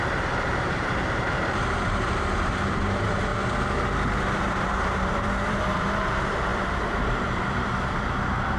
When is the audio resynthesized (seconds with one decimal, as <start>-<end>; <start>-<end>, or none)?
0.0-3.3; 4.4-8.6